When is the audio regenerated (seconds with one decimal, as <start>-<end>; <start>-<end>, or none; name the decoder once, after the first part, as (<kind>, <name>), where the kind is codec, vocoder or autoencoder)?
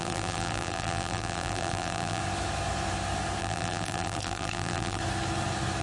0.0-2.2 (vocoder, BigVGAN v2); 3.4-5.0